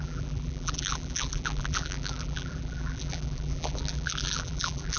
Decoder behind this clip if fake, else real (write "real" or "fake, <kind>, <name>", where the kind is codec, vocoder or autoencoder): fake, vocoder, BigVGAN v2